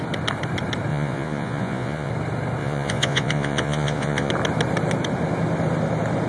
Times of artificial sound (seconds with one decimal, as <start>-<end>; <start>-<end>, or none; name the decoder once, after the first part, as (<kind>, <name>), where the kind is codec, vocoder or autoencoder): 0.9-2.1 (vocoder, Vocos); 2.6-4.3